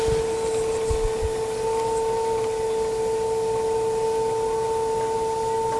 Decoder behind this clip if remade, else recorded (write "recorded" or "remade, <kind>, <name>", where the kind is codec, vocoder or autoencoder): recorded